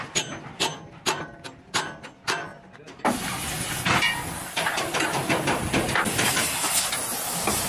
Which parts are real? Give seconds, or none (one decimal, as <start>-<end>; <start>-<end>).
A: 0.0-7.7